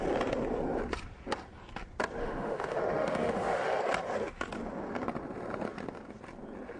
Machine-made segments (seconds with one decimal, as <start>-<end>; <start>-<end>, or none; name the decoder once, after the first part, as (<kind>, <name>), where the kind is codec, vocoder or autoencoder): 2.2-3.8 (autoencoder, DAC-VAE)